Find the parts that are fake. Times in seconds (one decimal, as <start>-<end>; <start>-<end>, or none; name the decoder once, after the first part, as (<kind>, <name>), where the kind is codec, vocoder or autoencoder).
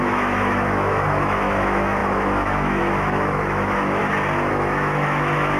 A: 0.0-4.0 (autoencoder, DAC-VAE); 4.5-5.6